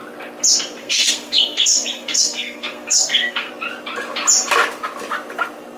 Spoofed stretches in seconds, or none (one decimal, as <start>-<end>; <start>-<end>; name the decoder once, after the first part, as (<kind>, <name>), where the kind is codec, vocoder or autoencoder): 0.8-3.5 (codec, SNAC)